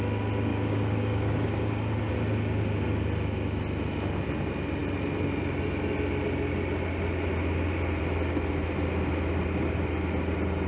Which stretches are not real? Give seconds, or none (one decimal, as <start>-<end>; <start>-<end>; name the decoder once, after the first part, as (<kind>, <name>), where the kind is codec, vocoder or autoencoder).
0.5-2.1 (codec, DAC)